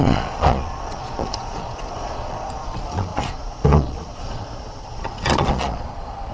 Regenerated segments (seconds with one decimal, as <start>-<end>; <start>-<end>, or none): 0.0-6.3

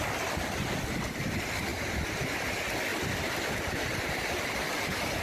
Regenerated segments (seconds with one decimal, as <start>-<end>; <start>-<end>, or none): none